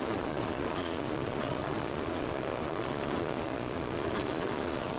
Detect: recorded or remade remade